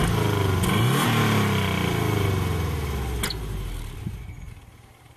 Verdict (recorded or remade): recorded